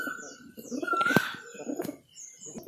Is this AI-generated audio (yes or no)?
no